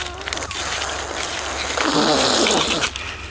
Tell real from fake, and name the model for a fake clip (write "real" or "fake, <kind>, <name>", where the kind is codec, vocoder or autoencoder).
real